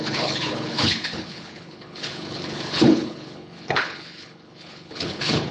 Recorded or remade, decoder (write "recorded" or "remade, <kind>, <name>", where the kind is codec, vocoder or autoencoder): remade, codec, HILCodec